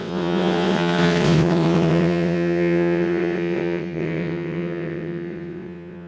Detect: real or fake fake